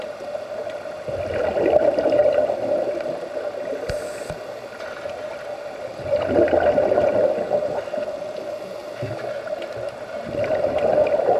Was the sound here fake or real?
real